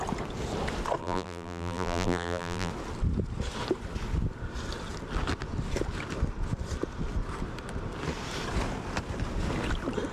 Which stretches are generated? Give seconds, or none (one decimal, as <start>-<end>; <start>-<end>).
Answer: 1.0-2.7